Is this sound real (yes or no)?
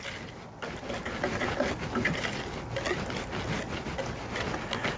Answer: yes